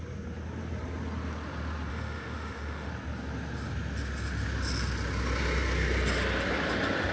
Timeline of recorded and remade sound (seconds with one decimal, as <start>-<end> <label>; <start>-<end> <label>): 0.0-1.9 recorded; 1.9-2.9 remade; 2.9-7.1 recorded